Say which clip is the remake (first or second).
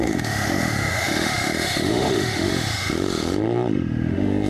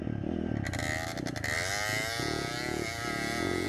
first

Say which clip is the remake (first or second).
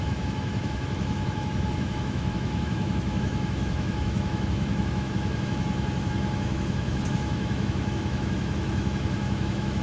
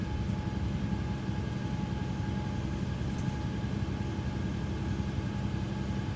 first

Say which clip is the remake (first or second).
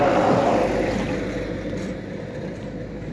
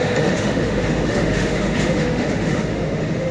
second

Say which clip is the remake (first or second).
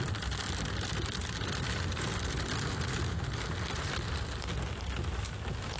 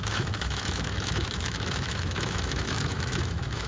second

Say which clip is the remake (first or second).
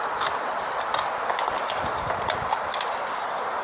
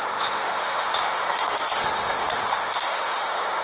second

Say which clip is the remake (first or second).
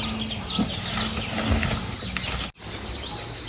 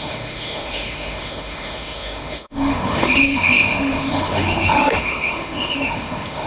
second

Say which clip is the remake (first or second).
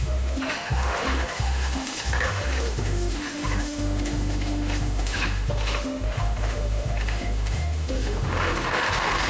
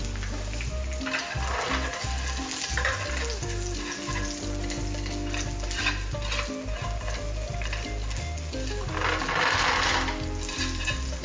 first